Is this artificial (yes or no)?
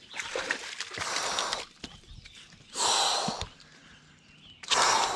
no